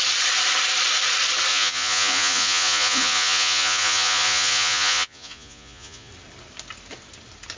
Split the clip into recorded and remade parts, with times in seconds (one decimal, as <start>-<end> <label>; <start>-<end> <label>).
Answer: 0.0-1.5 recorded; 1.5-6.1 remade; 6.1-7.6 recorded